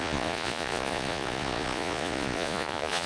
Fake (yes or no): yes